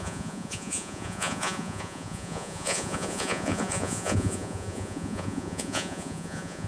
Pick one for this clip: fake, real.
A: fake